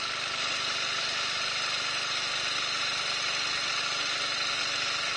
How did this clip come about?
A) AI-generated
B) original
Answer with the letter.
B